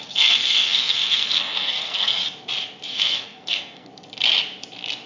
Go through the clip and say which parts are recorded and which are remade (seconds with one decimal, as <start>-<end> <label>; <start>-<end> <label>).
0.0-2.2 remade; 2.2-2.9 recorded; 2.9-3.9 remade; 3.9-5.1 recorded